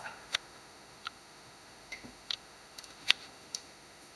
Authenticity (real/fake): fake